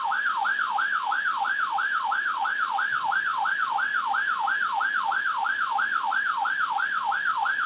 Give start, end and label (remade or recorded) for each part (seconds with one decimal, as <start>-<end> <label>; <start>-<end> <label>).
0.0-3.9 remade; 3.9-5.0 recorded; 5.0-7.7 remade